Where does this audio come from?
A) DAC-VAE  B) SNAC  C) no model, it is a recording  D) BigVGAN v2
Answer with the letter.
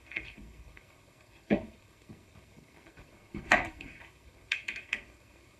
B